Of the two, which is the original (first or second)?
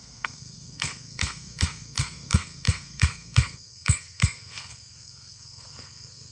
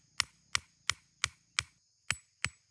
second